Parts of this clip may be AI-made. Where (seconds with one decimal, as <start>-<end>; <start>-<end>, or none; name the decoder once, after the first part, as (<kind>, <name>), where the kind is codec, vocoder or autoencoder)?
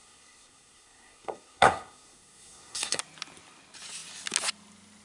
0.0-3.0 (codec, SNAC)